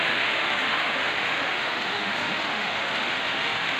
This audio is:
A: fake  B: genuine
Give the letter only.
A